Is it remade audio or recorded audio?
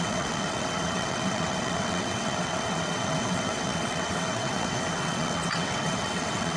remade